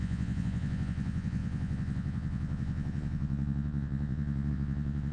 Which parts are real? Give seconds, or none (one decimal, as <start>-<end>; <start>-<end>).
none

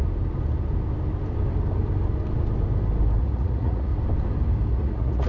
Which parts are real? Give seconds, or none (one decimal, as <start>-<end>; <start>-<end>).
0.0-3.2; 3.9-4.7

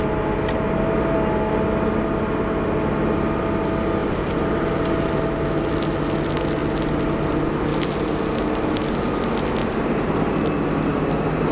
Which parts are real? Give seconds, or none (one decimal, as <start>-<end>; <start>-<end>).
0.0-4.0; 5.2-9.6; 10.3-11.5